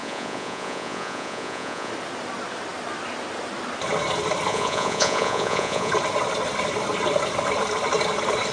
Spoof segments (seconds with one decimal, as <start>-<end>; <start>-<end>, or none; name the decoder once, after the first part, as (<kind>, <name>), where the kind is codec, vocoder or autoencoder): 0.0-1.9 (vocoder, Vocos); 4.5-5.9

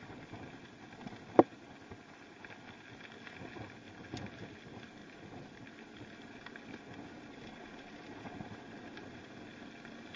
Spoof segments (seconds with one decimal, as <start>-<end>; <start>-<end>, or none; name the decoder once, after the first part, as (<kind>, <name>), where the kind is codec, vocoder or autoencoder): none

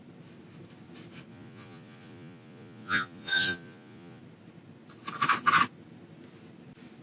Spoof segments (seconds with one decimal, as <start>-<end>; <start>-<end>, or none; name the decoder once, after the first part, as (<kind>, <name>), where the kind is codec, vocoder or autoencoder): 1.3-4.2 (vocoder, Vocos)

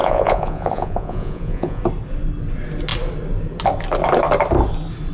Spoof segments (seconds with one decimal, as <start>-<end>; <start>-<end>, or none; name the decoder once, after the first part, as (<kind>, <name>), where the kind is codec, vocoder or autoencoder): 0.0-1.8 (vocoder, Vocos)

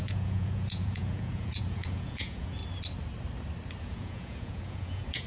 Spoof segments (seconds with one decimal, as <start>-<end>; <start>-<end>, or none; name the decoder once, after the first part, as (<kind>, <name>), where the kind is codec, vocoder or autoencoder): 0.0-2.6 (vocoder, Vocos); 3.8-5.3

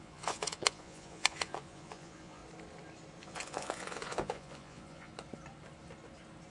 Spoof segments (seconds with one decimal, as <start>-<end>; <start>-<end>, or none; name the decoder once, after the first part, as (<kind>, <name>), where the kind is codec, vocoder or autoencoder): 0.0-2.4 (vocoder, Vocos); 3.2-5.1

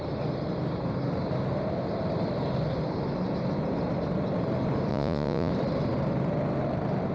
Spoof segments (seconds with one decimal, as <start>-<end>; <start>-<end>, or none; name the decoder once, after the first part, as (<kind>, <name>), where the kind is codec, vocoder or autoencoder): 4.9-5.5 (vocoder, Vocos)